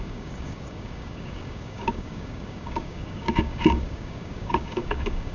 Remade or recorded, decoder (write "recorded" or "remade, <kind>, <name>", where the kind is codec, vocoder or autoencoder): remade, codec, DAC